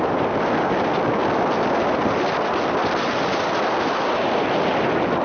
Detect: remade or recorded recorded